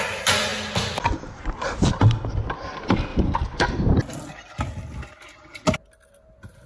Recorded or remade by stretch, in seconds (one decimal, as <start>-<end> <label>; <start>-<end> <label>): 0.0-3.1 recorded; 3.1-3.6 remade; 3.6-6.7 recorded

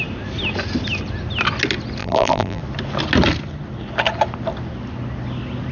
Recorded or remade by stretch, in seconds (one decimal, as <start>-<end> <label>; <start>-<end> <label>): 0.0-2.0 recorded; 2.0-2.6 remade; 2.6-5.7 recorded

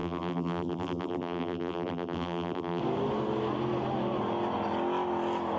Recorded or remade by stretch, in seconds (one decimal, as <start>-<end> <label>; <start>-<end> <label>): 0.0-2.8 remade; 2.8-5.6 recorded

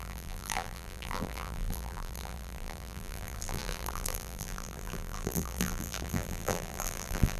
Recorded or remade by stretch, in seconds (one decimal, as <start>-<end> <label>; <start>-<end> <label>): 0.0-7.4 remade